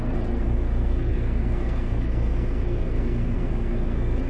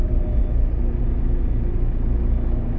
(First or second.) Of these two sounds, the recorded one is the second